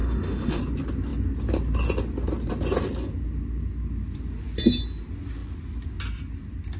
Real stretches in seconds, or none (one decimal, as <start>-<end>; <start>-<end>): 0.6-6.8